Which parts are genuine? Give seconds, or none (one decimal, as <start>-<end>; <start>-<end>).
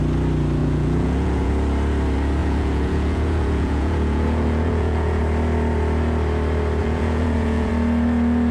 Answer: 0.0-0.6; 1.5-2.4; 5.2-6.8; 7.7-8.5